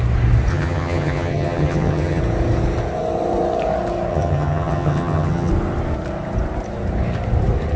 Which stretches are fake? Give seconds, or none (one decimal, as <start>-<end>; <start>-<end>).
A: 0.5-2.2; 4.1-5.5